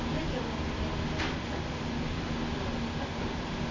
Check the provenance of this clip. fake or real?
real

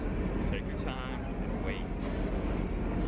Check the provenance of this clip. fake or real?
real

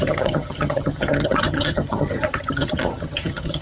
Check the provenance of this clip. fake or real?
fake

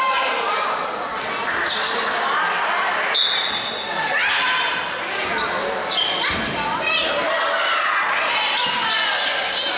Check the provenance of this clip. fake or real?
real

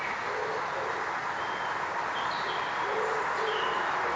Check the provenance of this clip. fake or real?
real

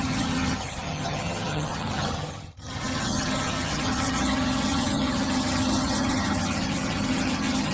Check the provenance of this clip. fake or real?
fake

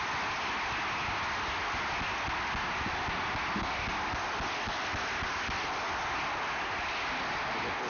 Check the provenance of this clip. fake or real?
real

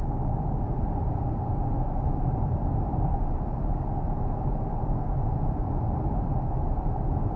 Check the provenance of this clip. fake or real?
real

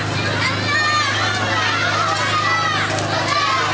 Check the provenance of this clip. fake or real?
real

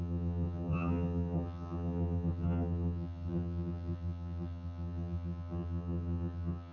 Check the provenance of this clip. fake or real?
fake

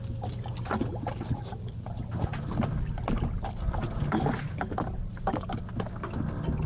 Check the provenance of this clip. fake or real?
real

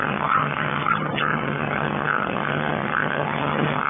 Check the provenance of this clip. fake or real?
fake